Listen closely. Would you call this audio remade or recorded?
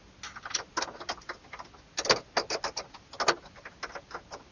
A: recorded